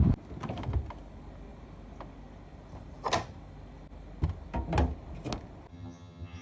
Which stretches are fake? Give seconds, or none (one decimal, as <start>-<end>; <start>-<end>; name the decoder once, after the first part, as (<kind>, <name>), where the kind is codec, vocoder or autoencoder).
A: 5.7-6.4 (vocoder, HiFi-GAN)